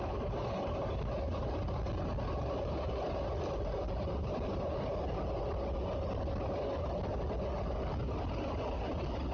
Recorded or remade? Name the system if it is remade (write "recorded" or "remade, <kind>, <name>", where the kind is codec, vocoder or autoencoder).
recorded